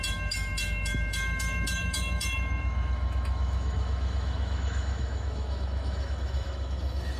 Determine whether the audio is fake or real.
fake